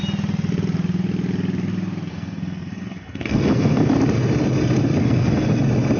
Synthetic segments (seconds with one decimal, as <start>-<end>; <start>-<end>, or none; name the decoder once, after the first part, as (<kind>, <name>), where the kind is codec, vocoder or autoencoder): 2.1-3.9 (codec, SNAC); 5.0-5.6